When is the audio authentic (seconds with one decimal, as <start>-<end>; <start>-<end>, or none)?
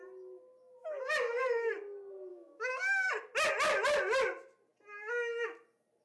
0.0-0.8; 1.7-2.3; 3.1-6.0